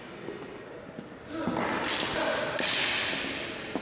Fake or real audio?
real